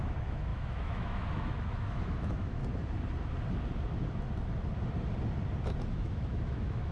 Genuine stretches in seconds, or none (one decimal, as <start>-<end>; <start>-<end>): 2.6-5.9